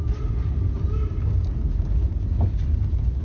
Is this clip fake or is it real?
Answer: real